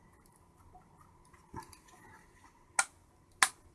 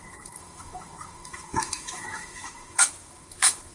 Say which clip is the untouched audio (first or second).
first